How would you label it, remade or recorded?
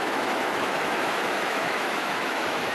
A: remade